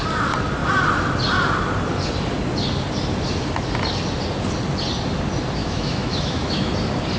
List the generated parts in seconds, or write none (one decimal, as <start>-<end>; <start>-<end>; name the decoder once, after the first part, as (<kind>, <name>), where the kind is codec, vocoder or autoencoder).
5.6-6.7 (autoencoder, DAC-VAE)